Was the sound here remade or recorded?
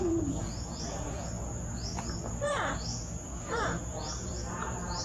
remade